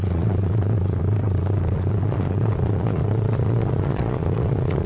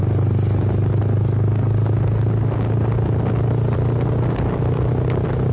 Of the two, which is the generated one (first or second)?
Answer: first